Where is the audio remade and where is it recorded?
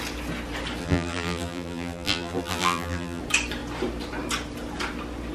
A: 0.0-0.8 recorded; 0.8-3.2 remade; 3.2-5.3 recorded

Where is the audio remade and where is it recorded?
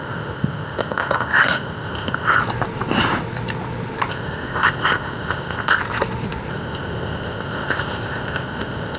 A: 0.0-2.4 remade; 2.4-4.1 recorded; 4.1-5.8 remade; 5.8-6.5 recorded; 6.5-9.0 remade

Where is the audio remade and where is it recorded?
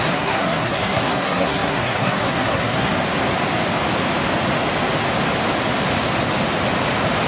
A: 0.0-2.9 remade; 2.9-7.3 recorded